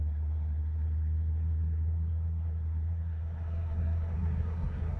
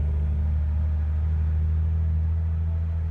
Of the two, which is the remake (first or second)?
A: first